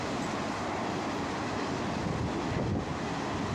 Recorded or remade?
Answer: recorded